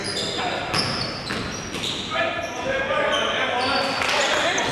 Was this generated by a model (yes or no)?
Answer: no